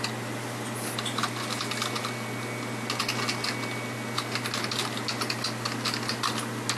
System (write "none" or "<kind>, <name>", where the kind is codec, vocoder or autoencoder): none